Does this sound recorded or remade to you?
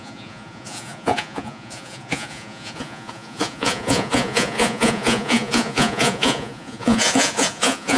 remade